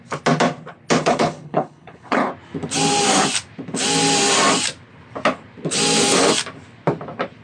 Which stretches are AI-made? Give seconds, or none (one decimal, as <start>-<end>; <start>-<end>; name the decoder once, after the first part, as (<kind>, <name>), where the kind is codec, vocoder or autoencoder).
1.0-2.3 (codec, HILCodec)

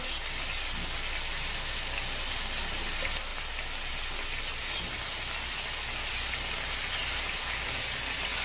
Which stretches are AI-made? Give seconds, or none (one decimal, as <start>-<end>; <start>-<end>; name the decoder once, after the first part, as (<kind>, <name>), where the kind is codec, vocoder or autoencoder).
none